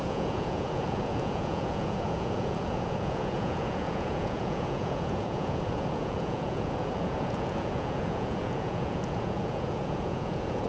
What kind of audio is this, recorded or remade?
remade